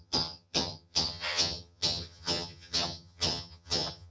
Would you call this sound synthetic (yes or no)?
yes